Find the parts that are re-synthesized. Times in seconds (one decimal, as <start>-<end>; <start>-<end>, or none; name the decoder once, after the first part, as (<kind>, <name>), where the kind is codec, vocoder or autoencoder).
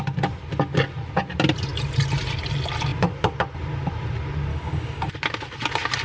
4.5-5.1 (codec, DAC)